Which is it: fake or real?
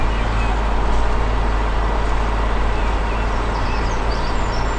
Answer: real